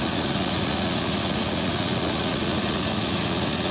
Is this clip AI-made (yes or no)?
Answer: yes